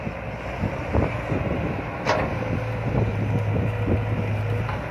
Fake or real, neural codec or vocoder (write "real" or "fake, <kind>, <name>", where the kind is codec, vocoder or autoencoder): real